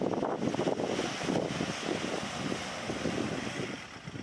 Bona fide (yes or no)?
yes